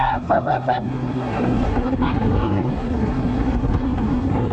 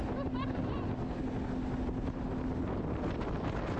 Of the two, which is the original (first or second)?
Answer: second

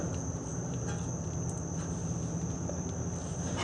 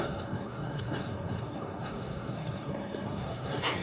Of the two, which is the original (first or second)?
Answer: first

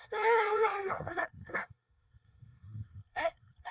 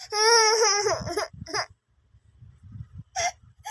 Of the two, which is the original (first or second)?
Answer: second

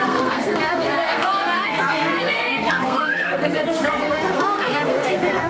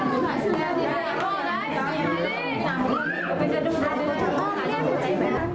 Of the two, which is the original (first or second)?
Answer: second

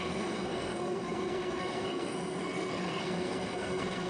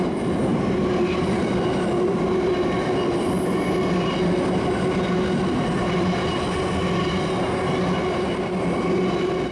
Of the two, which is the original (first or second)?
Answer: second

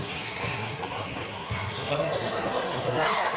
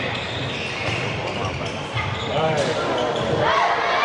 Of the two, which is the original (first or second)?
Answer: second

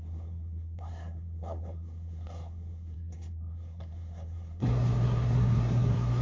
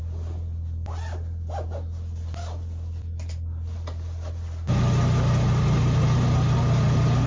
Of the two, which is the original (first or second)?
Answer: second